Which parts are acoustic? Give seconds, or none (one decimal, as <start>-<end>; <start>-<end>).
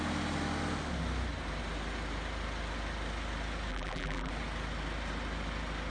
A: 0.0-3.7; 4.3-5.9